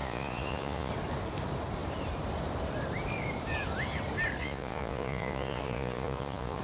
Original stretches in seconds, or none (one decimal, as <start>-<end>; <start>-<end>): 0.9-4.4